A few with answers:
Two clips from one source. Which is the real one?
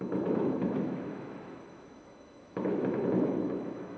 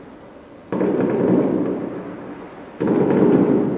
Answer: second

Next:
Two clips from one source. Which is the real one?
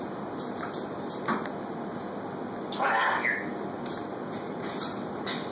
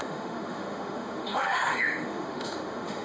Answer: first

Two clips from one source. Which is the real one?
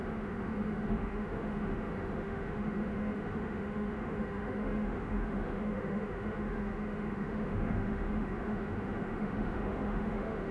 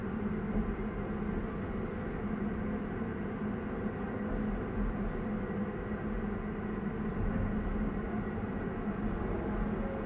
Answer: second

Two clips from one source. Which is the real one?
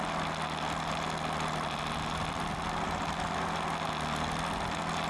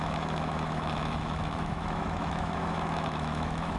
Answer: first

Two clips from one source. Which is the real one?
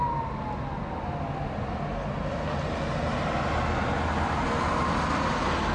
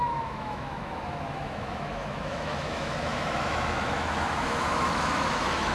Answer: first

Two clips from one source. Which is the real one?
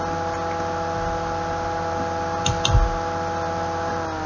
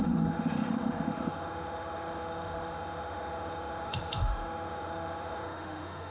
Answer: first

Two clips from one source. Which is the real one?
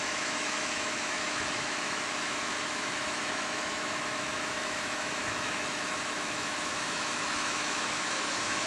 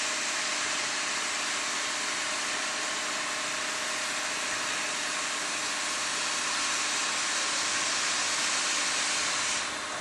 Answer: second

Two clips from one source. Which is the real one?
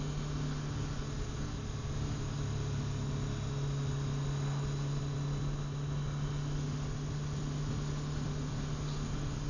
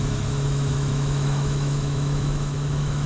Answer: first